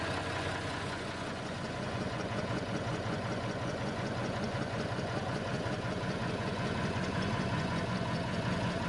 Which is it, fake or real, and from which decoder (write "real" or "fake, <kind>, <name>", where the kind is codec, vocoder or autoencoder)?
fake, vocoder, Vocos